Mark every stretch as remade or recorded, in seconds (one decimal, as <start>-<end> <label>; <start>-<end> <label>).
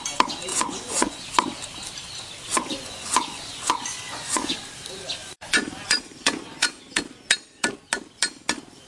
0.0-0.5 recorded; 0.5-1.3 remade; 1.3-2.5 recorded; 2.5-4.5 remade; 4.5-5.2 recorded; 5.2-6.8 remade; 6.8-8.9 recorded